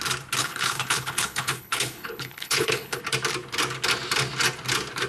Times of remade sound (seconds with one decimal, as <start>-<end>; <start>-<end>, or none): 0.4-3.0